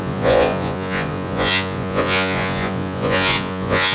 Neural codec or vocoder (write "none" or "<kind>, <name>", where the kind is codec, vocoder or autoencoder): vocoder, Vocos